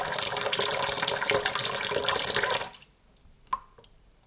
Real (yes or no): yes